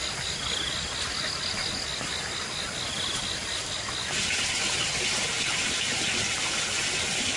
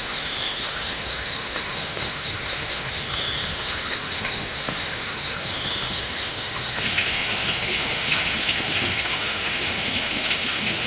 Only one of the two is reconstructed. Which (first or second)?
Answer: second